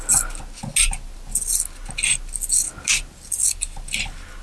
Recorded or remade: recorded